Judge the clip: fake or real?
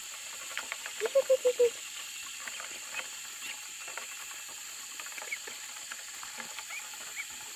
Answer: fake